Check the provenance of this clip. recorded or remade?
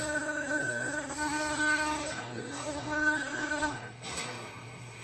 remade